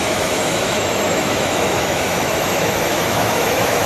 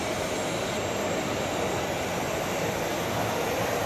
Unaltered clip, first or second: second